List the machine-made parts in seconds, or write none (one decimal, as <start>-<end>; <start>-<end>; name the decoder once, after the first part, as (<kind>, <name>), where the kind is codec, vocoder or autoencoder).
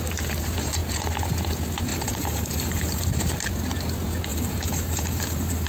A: 1.9-3.0 (vocoder, BigVGAN v2); 4.3-5.7